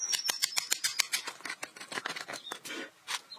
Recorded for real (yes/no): yes